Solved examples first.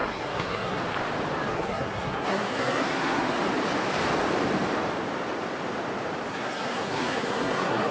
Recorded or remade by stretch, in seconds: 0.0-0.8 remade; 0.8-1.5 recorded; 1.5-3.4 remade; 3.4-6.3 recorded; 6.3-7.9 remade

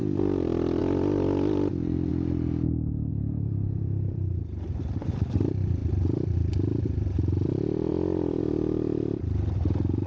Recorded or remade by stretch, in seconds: 0.0-2.1 remade; 2.1-3.1 recorded; 3.1-10.1 remade

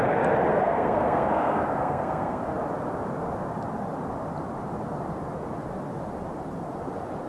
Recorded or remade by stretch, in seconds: 0.0-0.5 recorded; 0.5-2.4 remade; 2.4-7.3 recorded

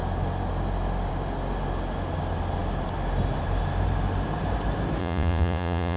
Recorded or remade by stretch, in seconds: 0.0-5.0 recorded; 5.0-6.0 remade

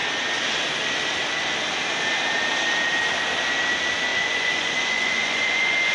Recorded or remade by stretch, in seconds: 0.0-4.1 recorded; 4.1-5.9 remade

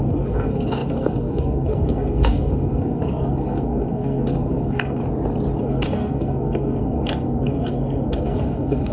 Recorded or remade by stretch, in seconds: 0.0-5.0 remade; 5.0-5.6 recorded; 5.6-8.9 remade

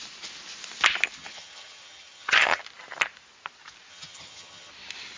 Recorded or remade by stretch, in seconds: 0.0-1.2 recorded; 1.2-2.6 remade; 2.6-3.9 recorded; 3.9-4.7 remade; 4.7-5.2 recorded

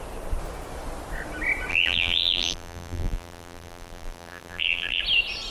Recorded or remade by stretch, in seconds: 0.0-1.7 recorded; 1.7-5.0 remade; 5.0-5.5 recorded